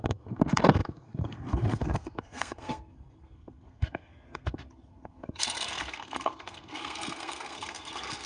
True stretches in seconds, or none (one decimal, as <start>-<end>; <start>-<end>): none